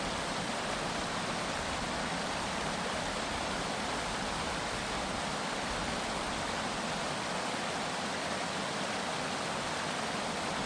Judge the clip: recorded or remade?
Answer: recorded